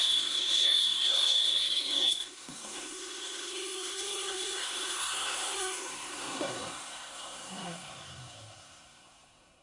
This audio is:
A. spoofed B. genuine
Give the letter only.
A